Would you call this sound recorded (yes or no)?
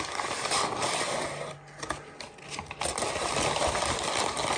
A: yes